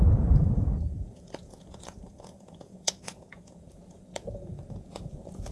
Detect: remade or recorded remade